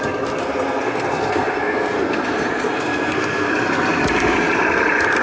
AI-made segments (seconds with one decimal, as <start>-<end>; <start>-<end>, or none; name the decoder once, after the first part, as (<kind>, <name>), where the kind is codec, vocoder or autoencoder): 0.4-3.5 (codec, SNAC)